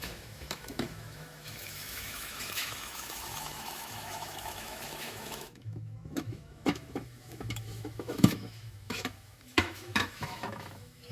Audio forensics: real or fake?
fake